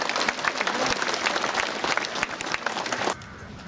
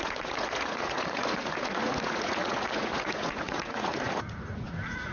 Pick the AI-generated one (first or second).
second